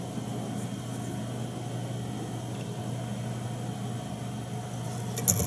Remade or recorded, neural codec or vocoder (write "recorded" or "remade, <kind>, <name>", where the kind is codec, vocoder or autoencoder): recorded